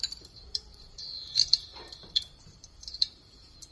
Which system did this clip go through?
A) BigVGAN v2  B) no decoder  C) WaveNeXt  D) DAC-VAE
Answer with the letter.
A